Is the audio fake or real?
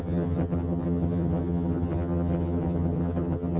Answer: fake